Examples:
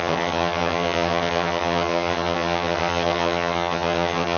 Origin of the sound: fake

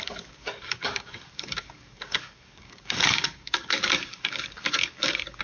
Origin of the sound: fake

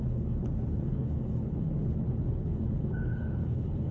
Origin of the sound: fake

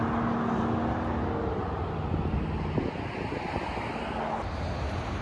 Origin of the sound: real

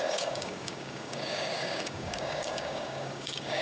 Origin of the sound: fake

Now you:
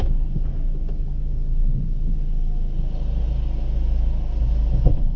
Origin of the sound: real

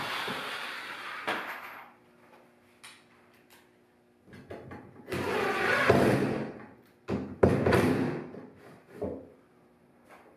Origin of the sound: real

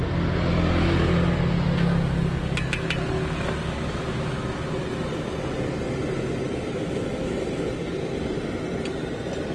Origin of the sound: real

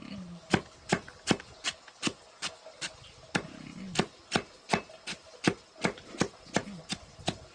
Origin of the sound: real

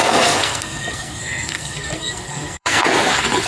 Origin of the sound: fake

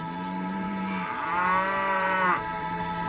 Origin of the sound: fake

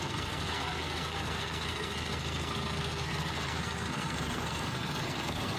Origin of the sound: fake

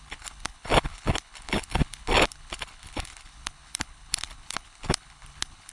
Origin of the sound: fake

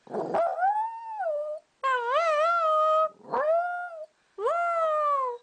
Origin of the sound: real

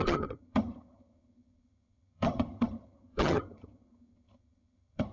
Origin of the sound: fake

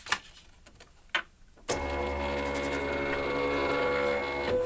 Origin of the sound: real